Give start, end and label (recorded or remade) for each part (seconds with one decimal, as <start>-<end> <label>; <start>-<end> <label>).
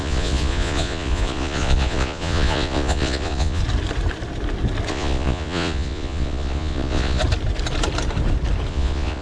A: 0.0-3.6 remade; 3.6-4.9 recorded; 4.9-7.2 remade; 7.2-8.7 recorded; 8.7-9.2 remade